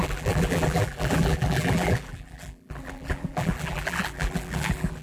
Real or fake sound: fake